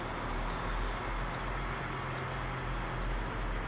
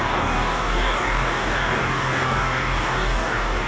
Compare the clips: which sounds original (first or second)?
first